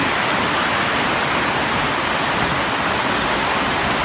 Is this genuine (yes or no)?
yes